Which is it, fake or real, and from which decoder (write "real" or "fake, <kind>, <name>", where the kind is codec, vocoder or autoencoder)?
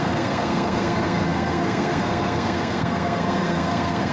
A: fake, codec, SNAC